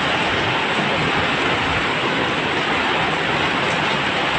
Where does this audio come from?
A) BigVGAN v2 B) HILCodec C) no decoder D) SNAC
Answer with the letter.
C